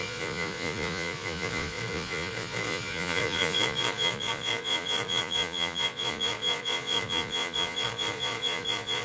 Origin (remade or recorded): remade